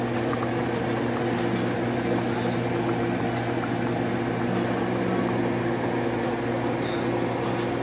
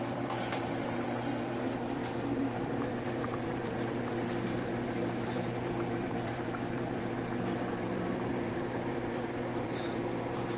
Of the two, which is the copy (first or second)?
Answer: second